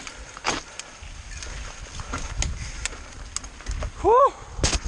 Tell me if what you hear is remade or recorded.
recorded